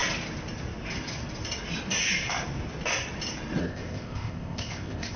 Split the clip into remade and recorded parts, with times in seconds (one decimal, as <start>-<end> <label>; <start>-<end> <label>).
0.0-3.6 recorded; 3.6-5.2 remade